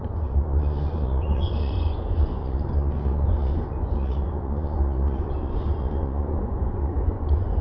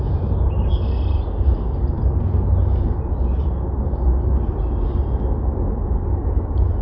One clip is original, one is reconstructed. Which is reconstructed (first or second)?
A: first